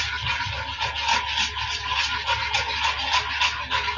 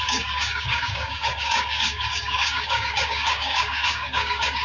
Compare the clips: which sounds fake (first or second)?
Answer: second